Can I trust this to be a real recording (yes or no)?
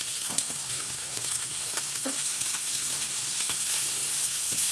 no